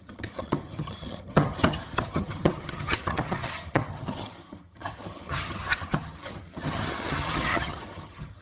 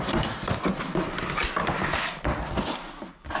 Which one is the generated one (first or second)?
first